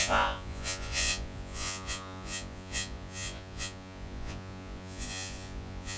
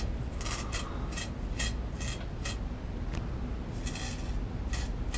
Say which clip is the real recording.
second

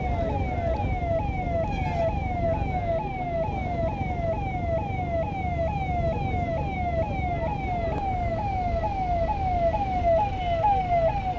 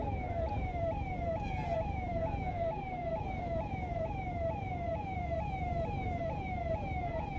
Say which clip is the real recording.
first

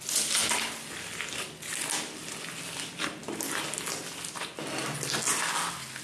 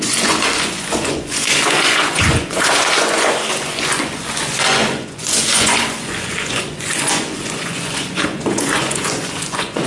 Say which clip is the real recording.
first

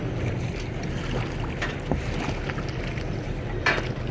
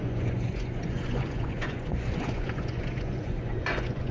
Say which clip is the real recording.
first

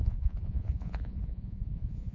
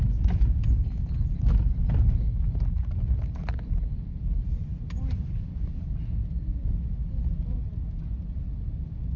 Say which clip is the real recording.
second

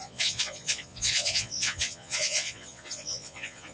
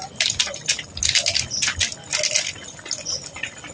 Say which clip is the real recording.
second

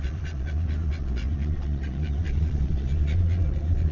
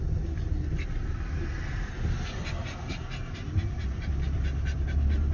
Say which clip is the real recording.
second